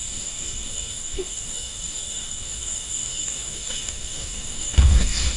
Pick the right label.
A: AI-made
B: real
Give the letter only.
A